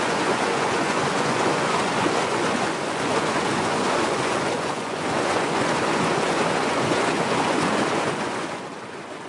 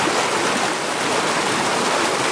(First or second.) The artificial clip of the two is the first